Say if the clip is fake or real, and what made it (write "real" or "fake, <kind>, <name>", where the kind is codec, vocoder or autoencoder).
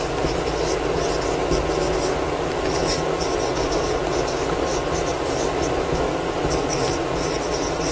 real